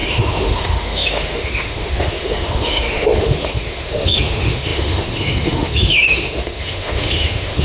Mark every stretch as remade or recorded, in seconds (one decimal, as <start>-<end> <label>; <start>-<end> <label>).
0.0-7.6 remade